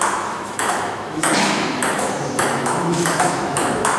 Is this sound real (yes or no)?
no